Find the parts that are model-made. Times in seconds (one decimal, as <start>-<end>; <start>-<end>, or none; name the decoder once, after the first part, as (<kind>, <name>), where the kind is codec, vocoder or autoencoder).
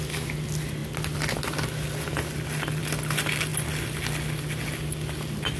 none